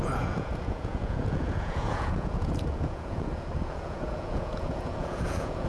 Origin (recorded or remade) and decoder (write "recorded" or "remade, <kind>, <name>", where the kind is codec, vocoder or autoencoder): remade, vocoder, Vocos